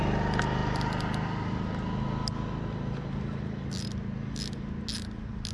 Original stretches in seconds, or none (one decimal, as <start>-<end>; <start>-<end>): 0.0-5.5